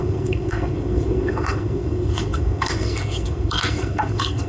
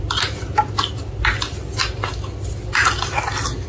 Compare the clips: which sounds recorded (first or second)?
second